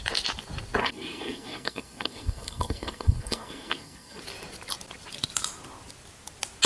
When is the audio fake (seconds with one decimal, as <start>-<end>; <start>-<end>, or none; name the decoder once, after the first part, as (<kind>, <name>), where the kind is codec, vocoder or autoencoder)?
0.8-4.2 (codec, SNAC)